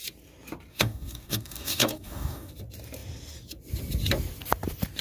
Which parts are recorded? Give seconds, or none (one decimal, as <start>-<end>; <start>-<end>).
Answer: 0.0-0.7; 2.5-5.0